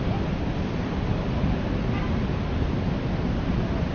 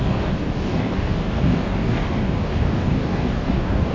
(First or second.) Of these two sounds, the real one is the first